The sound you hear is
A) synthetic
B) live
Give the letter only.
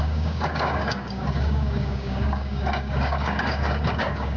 A